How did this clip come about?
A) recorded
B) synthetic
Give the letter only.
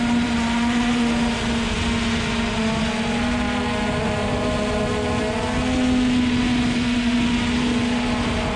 A